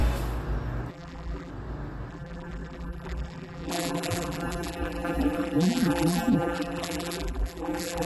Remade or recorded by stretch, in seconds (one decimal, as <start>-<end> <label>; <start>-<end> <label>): 0.0-0.9 recorded; 0.9-1.5 remade; 1.5-2.1 recorded; 2.1-8.0 remade